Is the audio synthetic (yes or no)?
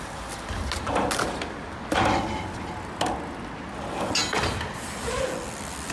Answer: no